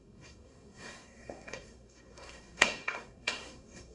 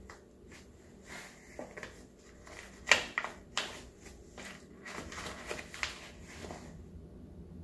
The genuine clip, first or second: second